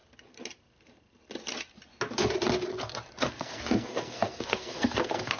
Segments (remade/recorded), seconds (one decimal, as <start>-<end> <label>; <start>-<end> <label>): 0.0-3.2 recorded; 3.2-5.4 remade